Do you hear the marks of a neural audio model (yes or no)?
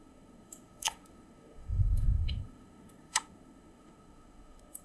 yes